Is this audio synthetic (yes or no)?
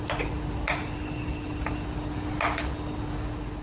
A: no